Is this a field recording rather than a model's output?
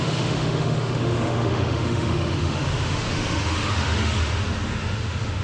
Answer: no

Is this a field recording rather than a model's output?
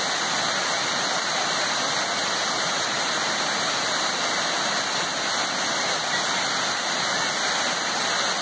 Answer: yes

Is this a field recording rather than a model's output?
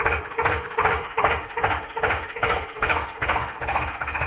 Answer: no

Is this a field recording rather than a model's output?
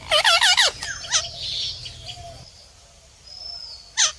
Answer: yes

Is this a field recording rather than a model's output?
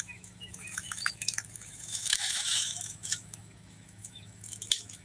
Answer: no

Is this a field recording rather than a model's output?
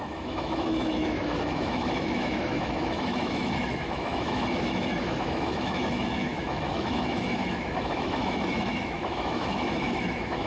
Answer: no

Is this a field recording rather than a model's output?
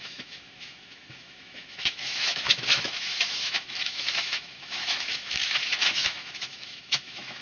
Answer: no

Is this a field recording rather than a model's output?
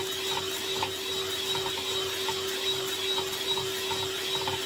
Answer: yes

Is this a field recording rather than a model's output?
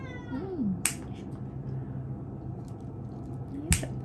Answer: yes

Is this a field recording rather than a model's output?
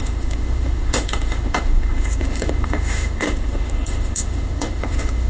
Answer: no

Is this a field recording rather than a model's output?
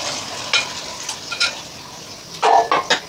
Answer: yes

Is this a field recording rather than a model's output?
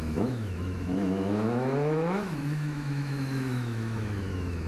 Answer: no